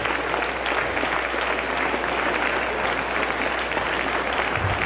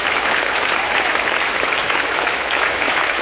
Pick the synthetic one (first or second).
second